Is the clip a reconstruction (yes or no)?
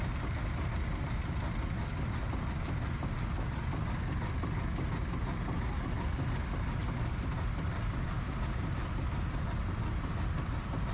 no